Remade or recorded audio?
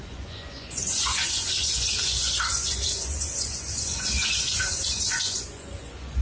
remade